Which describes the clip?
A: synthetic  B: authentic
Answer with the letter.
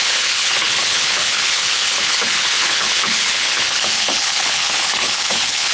A